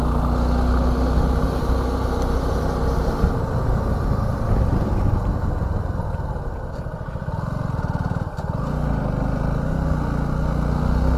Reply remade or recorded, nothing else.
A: recorded